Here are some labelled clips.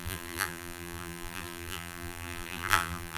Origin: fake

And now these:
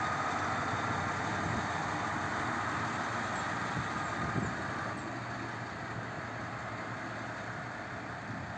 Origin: real